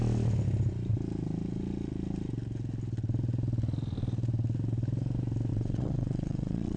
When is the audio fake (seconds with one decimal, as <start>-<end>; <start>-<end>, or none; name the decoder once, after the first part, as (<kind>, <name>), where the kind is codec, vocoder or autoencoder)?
5.5-6.8 (vocoder, WaveNeXt)